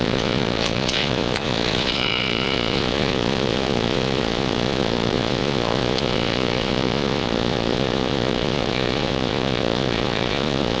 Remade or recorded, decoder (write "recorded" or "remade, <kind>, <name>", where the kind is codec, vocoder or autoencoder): remade, vocoder, Vocos